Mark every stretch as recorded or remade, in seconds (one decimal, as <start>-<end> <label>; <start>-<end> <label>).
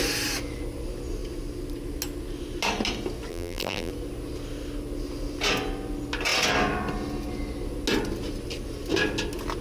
0.0-3.3 recorded; 3.3-3.9 remade; 3.9-9.6 recorded